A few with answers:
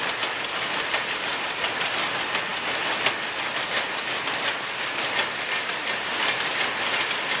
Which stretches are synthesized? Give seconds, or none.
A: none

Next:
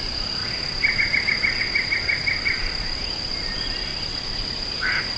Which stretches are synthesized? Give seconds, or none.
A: 0.0-0.4 (vocoder, BigVGAN v2); 1.6-2.2; 2.8-3.9; 4.7-5.2

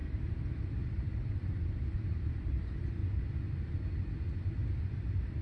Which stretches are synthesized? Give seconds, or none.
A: 0.0-3.0 (vocoder, BigVGAN v2)

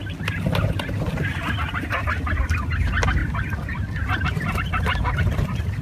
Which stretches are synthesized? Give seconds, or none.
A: none

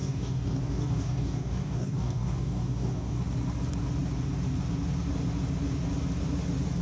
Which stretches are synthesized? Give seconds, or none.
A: 0.0-3.2 (codec, DAC)